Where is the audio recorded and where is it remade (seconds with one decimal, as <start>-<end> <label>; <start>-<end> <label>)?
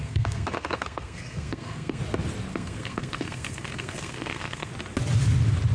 0.0-2.0 remade; 2.0-2.5 recorded; 2.5-4.7 remade; 4.7-5.7 recorded